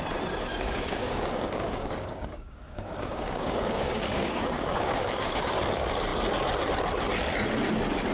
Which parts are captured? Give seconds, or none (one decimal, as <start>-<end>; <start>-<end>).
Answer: 0.0-0.5; 5.4-8.1